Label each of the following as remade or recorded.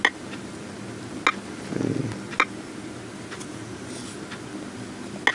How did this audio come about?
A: recorded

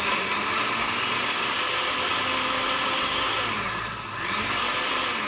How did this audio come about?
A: recorded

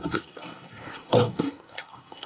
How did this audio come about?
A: remade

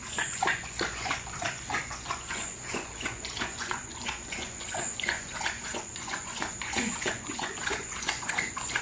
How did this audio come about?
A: remade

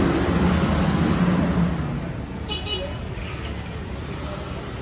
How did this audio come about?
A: recorded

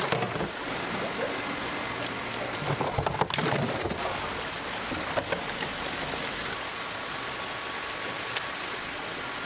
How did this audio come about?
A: recorded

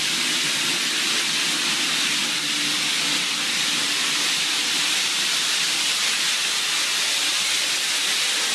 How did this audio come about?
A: recorded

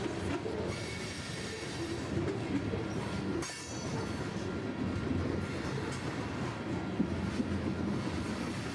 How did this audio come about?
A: recorded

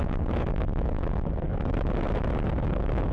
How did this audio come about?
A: remade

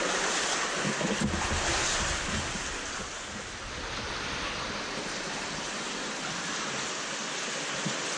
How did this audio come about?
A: recorded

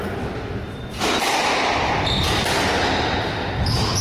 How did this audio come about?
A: recorded